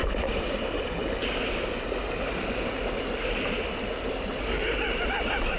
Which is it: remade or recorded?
recorded